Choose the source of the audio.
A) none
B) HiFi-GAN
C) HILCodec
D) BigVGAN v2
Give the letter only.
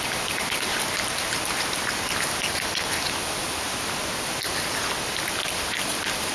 A